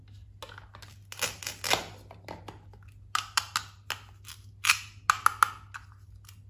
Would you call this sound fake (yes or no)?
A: no